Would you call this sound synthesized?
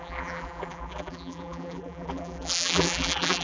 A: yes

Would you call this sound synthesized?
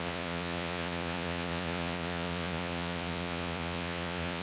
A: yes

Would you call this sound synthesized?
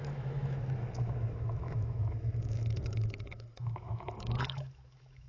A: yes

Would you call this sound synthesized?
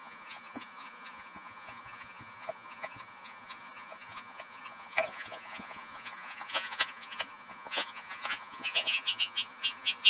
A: yes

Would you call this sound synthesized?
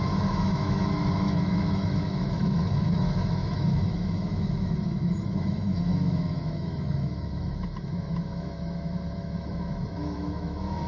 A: yes